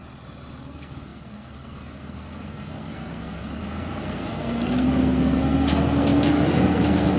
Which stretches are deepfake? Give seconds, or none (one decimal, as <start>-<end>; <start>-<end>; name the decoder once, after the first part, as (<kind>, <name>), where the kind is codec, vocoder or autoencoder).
0.6-7.2 (codec, SNAC)